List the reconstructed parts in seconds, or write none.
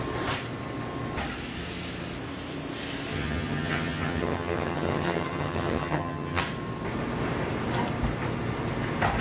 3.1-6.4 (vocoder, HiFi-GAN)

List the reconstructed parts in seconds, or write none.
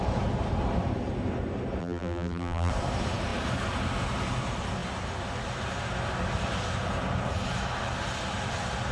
1.8-2.7 (vocoder, BigVGAN v2)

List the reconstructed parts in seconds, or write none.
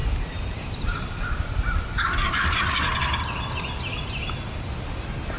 none